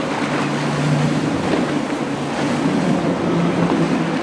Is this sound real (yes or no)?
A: yes